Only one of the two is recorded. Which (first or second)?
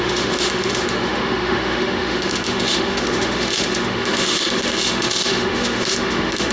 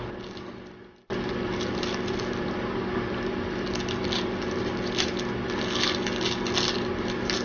second